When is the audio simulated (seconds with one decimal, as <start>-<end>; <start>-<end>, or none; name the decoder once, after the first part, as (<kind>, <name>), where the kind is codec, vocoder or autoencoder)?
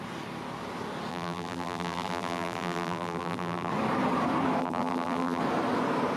1.1-3.7 (vocoder, BigVGAN v2); 4.6-5.4